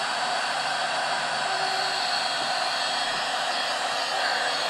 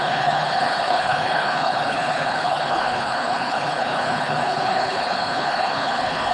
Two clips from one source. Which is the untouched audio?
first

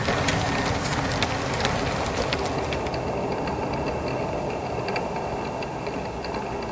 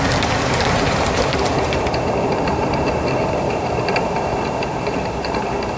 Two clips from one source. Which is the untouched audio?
first